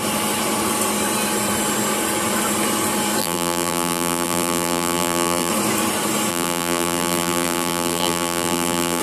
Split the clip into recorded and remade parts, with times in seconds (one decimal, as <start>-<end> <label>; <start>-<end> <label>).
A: 0.0-3.2 recorded; 3.2-5.5 remade; 5.5-6.3 recorded; 6.3-9.0 remade